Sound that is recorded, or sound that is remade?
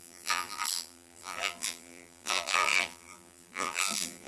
remade